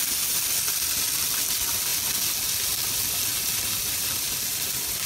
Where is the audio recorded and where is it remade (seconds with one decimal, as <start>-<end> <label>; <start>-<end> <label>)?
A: 0.0-5.1 recorded

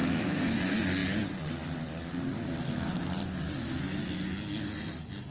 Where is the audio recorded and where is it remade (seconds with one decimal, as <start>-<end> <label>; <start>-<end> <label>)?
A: 0.0-0.6 remade; 0.6-5.3 recorded

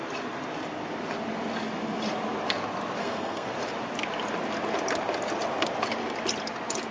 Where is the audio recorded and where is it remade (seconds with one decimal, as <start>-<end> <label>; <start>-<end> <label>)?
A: 0.0-3.0 recorded; 3.0-3.5 remade; 3.5-6.9 recorded

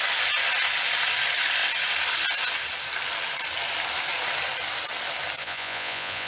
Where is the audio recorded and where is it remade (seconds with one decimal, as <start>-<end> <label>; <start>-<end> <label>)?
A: 0.0-5.4 recorded; 5.4-6.3 remade

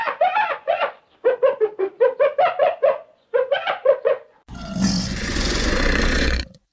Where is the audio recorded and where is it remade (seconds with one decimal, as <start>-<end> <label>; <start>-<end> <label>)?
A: 0.0-1.0 remade; 1.0-2.6 recorded; 2.6-6.7 remade

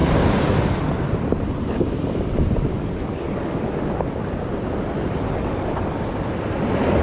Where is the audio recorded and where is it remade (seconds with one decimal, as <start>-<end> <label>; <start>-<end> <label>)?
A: 0.0-7.0 recorded

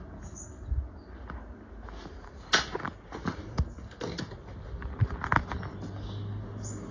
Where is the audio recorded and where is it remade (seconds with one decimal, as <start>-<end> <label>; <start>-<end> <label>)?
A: 0.0-6.9 recorded

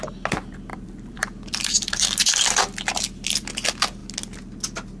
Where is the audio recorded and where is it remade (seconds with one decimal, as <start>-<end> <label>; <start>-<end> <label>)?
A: 0.0-0.7 recorded; 0.7-2.6 remade; 2.6-5.0 recorded